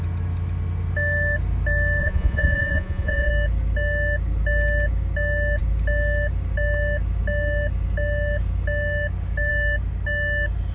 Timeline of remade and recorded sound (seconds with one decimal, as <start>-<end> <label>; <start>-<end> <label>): 0.0-2.0 recorded; 2.0-3.3 remade; 3.3-10.7 recorded